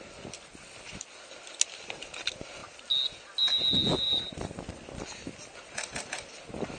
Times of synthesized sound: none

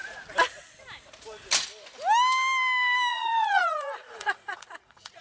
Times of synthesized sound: 3.1-5.2 (vocoder, Vocos)

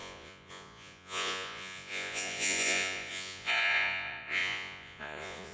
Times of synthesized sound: 0.0-5.5 (vocoder, Vocos)